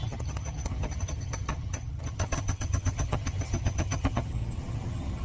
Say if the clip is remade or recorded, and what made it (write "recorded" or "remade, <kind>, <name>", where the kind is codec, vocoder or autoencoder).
remade, vocoder, HiFi-GAN